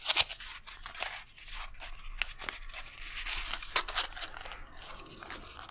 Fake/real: real